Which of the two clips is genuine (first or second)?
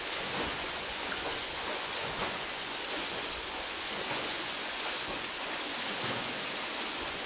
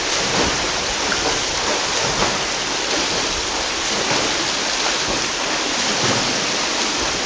second